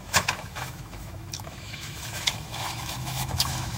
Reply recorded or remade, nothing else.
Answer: remade